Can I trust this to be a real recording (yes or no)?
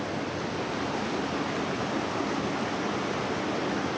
yes